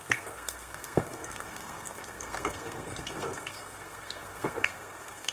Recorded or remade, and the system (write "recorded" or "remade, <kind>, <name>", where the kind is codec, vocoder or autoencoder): remade, codec, SNAC